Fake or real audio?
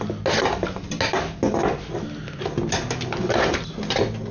real